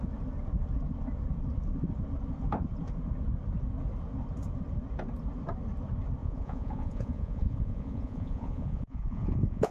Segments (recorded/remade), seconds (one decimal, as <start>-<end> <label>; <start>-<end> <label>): 0.0-6.2 recorded; 6.2-9.7 remade